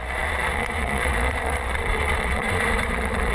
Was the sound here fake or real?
fake